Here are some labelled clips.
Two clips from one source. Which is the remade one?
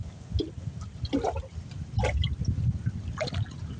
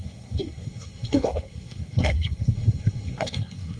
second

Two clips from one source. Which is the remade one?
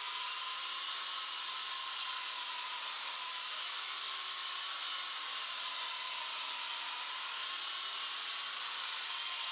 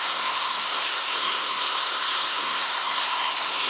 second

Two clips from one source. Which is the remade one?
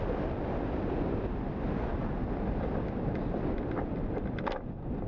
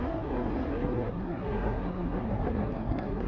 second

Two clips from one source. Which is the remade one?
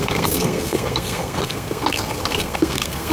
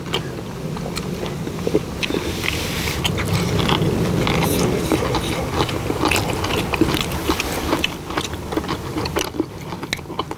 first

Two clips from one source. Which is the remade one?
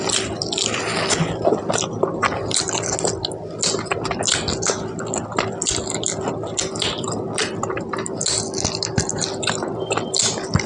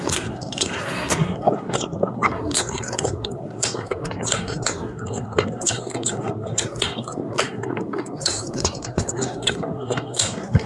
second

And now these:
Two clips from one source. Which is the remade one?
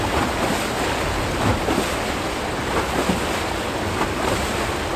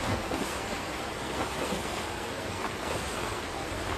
second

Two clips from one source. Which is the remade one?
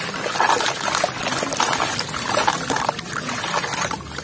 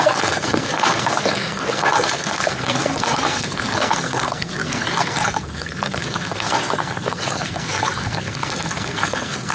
second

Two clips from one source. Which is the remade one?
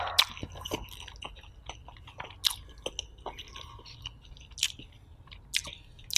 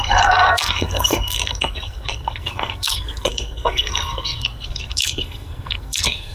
second